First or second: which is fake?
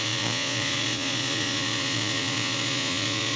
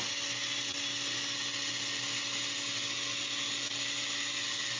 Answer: first